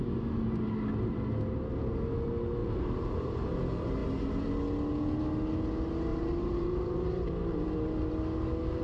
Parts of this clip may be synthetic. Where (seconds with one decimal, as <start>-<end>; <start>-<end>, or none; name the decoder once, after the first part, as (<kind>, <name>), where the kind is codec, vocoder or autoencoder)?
2.6-3.5 (vocoder, BigVGAN v2); 6.1-8.1